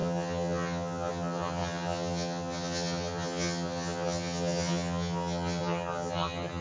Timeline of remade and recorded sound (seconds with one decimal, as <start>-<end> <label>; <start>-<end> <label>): 0.0-6.6 remade